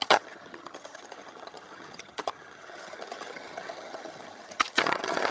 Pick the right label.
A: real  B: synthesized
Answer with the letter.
B